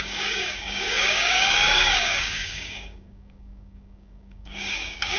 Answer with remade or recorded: remade